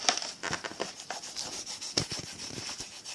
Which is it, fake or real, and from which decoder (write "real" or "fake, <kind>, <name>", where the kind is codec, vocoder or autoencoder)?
real